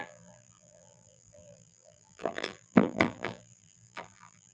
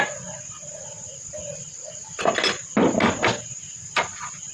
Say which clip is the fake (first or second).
first